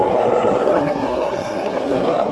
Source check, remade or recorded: remade